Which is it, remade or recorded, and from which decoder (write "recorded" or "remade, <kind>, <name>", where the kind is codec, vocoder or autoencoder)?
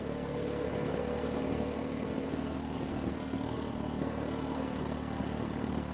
remade, codec, SNAC